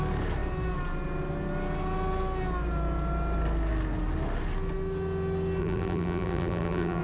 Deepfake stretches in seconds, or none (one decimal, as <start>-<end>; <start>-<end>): 5.6-7.0